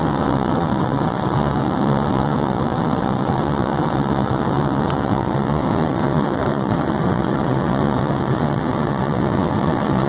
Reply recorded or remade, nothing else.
remade